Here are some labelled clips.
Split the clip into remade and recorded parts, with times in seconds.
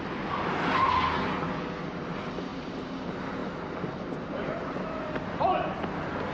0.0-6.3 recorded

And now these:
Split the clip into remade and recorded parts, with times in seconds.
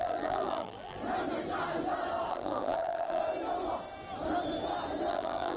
0.0-1.0 remade; 1.0-2.3 recorded; 2.3-3.2 remade; 3.2-5.1 recorded; 5.1-5.6 remade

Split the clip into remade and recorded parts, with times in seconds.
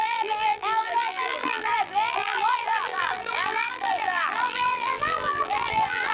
0.0-6.1 remade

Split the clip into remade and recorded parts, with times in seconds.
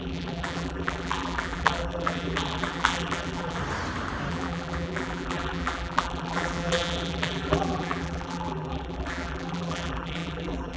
0.0-3.6 remade; 3.6-4.3 recorded; 4.3-10.8 remade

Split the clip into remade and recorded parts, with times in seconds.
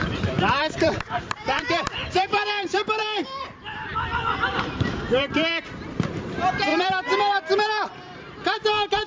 0.0-9.1 remade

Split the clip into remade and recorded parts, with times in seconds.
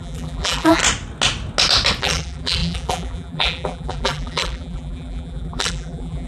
0.0-0.8 remade; 0.8-2.0 recorded; 2.0-6.3 remade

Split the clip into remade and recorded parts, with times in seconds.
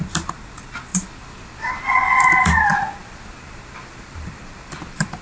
0.0-0.9 recorded; 0.9-1.7 remade; 1.7-3.0 recorded; 3.0-5.2 remade